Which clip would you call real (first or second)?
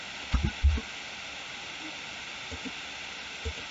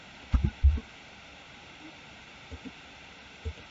first